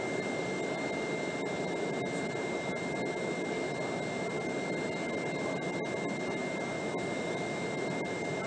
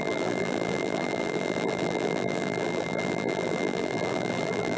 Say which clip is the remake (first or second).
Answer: second